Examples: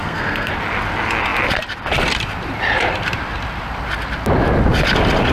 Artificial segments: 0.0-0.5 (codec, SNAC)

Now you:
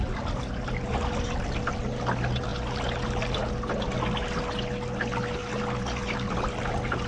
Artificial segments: none

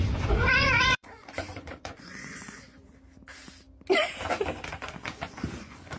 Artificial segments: 0.0-2.8 (vocoder, Vocos); 4.7-6.0

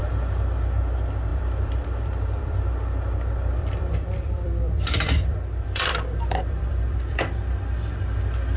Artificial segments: 1.3-2.6 (vocoder, BigVGAN v2); 3.6-7.3

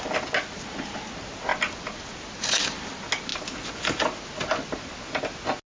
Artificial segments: none

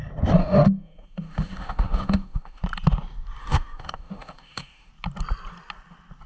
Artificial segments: 0.4-2.6 (autoencoder, DAC-VAE); 3.4-4.9

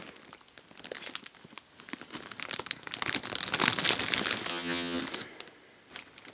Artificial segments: 4.5-5.0 (vocoder, HiFi-GAN)